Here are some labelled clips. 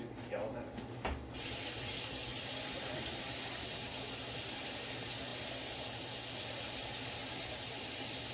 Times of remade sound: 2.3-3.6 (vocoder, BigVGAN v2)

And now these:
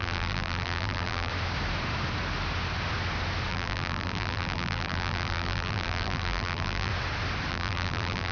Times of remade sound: 0.0-1.3 (vocoder, BigVGAN v2); 3.5-6.9; 7.5-8.3

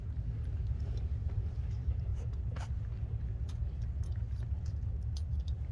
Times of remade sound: 1.0-2.1 (vocoder, BigVGAN v2)

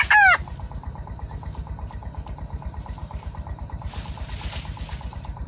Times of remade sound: 3.0-3.6 (vocoder, BigVGAN v2)

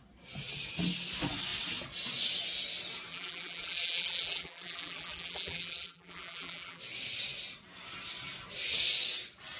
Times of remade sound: 3.1-6.8 (vocoder, BigVGAN v2)

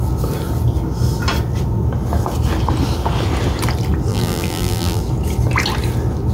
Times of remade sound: 4.1-5.0 (vocoder, BigVGAN v2)